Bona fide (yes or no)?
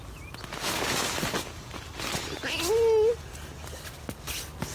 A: yes